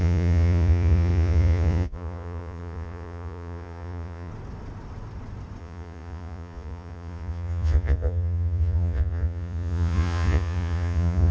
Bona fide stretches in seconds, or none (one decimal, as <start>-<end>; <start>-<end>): 4.3-5.6